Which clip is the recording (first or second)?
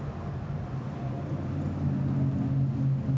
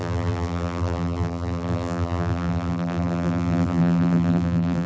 first